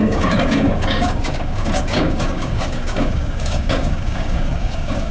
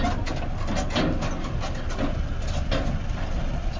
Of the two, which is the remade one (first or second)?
first